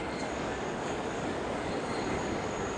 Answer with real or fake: fake